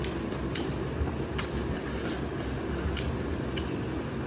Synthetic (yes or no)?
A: no